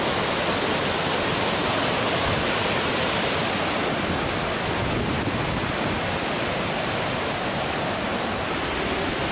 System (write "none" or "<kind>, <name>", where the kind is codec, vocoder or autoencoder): none